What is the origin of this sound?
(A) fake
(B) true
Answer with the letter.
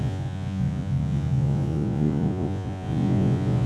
A